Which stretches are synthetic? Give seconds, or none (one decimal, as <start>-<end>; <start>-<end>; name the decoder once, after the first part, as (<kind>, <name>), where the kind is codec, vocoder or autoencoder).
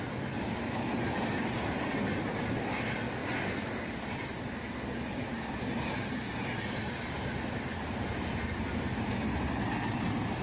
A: none